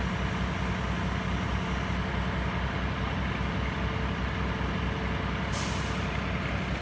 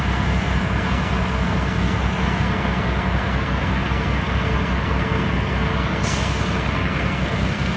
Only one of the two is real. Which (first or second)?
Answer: first